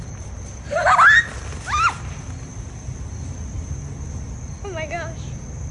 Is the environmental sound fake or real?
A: real